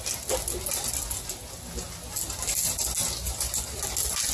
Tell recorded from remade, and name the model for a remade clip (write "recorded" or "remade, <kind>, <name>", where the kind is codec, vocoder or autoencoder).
recorded